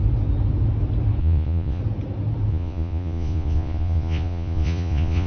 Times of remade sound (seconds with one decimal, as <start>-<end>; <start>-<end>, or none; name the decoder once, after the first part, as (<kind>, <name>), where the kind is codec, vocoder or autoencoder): 1.2-1.8 (vocoder, Vocos); 2.5-5.3